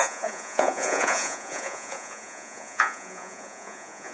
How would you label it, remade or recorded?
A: remade